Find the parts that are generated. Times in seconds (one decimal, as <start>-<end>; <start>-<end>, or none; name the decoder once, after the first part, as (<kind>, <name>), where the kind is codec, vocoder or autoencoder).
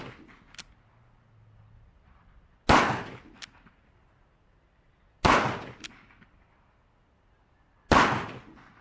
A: none